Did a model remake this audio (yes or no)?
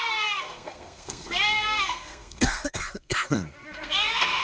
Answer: yes